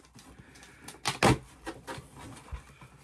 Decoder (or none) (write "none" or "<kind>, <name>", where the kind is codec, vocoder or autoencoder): none